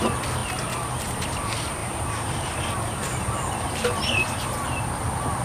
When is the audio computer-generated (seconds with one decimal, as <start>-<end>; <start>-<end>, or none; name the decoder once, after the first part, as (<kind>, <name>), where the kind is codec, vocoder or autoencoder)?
1.8-3.7 (vocoder, BigVGAN v2)

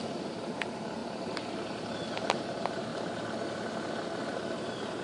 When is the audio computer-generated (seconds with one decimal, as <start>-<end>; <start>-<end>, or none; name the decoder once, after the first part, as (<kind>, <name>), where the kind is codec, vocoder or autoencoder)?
0.0-2.9 (vocoder, BigVGAN v2); 4.5-5.0

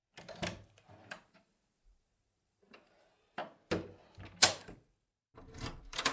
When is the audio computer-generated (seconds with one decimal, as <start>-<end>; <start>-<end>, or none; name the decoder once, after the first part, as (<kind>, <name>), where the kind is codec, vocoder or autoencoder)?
1.1-3.4 (vocoder, BigVGAN v2); 4.4-6.1

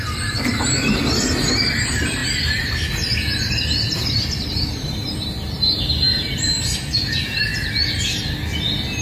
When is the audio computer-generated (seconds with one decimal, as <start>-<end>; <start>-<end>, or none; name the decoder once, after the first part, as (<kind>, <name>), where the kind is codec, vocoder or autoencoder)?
0.0-2.2 (vocoder, BigVGAN v2); 3.5-7.5

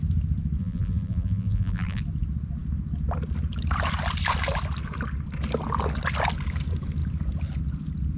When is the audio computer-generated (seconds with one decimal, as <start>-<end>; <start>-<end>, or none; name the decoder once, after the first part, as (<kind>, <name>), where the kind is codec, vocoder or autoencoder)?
0.6-2.0 (vocoder, BigVGAN v2)